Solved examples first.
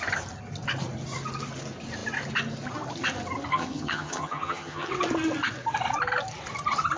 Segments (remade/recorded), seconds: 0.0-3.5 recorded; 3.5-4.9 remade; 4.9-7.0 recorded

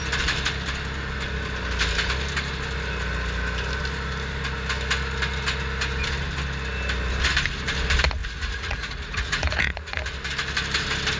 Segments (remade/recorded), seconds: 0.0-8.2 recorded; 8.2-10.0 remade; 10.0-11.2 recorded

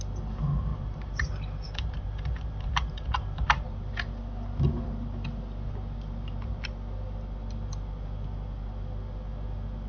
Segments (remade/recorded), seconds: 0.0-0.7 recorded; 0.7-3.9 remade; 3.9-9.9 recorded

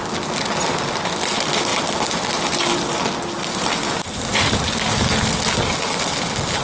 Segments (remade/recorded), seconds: 0.0-6.6 recorded